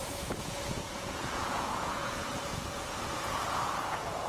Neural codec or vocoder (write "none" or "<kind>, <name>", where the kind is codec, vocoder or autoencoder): vocoder, Vocos